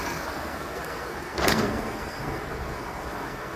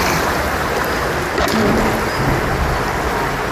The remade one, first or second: first